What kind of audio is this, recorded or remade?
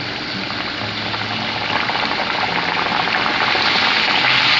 recorded